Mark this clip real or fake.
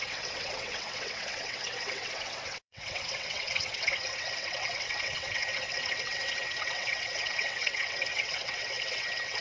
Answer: fake